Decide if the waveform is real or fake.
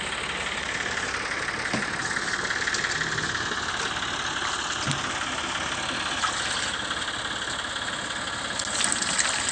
real